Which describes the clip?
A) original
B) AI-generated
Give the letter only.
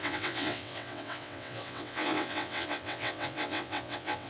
B